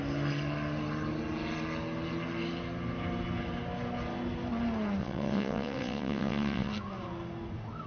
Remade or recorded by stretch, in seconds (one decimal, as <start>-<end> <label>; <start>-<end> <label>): 0.0-5.0 recorded; 5.0-6.7 remade; 6.7-7.9 recorded